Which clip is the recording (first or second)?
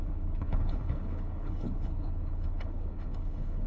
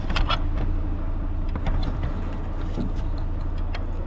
second